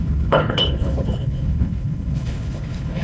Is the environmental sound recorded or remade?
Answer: remade